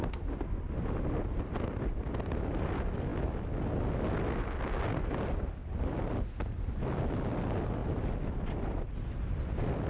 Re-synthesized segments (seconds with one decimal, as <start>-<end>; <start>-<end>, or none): 5.6-6.8